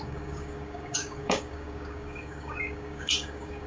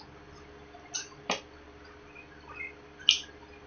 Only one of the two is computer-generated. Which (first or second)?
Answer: first